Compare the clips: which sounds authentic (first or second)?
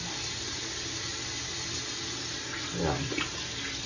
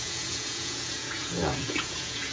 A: first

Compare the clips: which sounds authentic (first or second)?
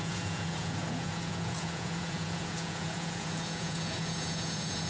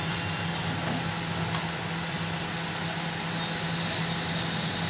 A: second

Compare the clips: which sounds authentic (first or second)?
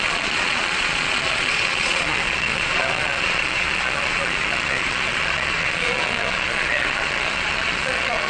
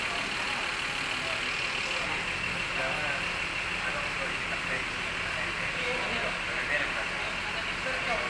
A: second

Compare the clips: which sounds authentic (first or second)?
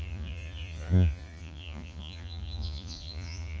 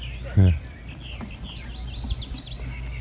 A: second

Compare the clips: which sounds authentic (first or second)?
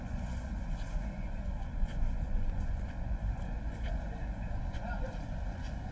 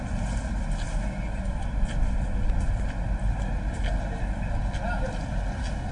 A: second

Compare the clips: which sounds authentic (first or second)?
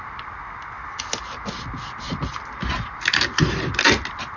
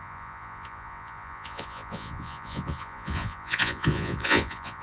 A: first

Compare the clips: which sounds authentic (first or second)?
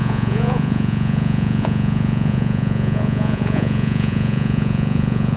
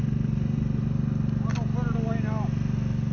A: second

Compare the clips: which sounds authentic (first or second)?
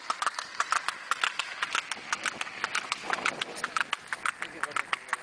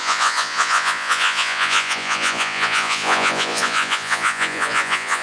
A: first